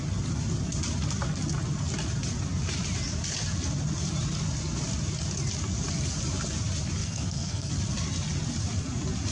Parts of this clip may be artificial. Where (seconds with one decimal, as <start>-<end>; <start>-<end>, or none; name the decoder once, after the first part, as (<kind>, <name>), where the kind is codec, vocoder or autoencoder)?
7.0-7.7 (codec, SNAC)